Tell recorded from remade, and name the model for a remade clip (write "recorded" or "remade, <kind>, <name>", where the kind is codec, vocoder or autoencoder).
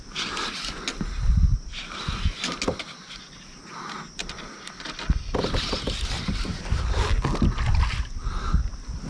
recorded